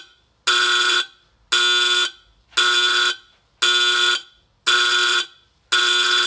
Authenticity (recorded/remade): recorded